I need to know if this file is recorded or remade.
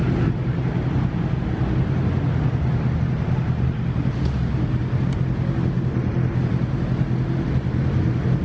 recorded